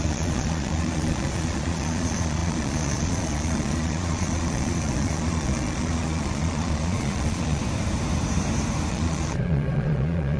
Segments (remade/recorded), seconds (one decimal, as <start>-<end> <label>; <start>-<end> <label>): 0.0-7.6 remade; 7.6-8.9 recorded; 8.9-10.4 remade